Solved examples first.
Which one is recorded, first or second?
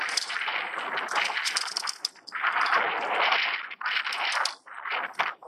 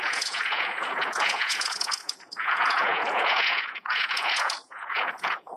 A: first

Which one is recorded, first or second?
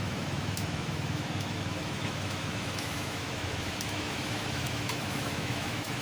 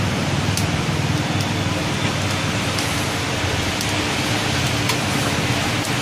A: second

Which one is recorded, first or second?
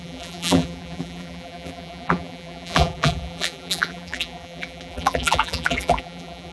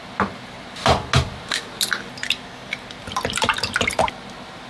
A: second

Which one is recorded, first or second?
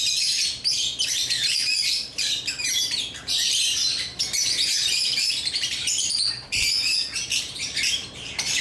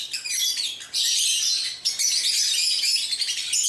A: second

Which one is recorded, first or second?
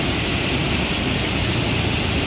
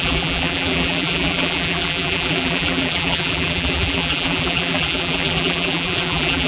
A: first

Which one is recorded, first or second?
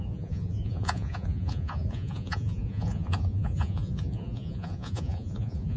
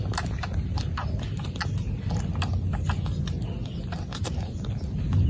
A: second